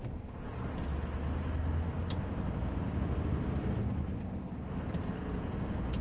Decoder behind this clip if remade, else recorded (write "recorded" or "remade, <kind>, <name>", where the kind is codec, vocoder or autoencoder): recorded